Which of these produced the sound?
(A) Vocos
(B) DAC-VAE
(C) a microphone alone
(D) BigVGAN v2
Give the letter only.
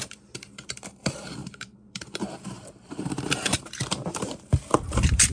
D